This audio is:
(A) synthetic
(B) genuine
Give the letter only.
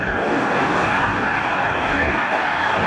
A